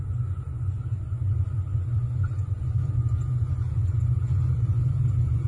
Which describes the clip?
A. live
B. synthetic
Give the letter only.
B